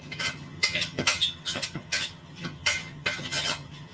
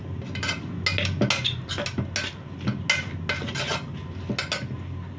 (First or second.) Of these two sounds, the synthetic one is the first